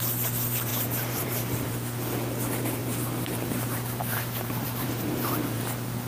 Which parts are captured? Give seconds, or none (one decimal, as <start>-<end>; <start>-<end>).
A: 0.0-0.7; 1.7-2.8; 5.6-6.1